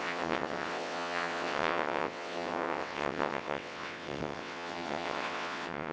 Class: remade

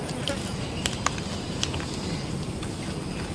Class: remade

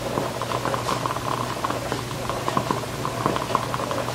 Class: recorded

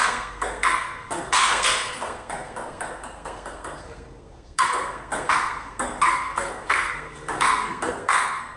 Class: remade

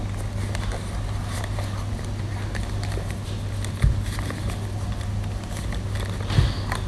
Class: recorded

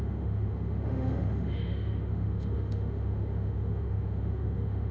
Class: remade